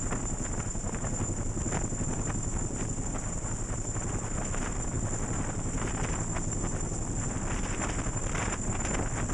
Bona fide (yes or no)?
yes